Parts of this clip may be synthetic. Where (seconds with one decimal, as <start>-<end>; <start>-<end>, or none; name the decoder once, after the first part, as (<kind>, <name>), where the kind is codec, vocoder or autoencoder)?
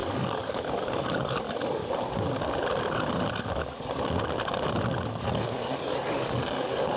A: 0.0-1.8 (codec, DAC); 5.2-7.0